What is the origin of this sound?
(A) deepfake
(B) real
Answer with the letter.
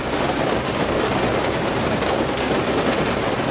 B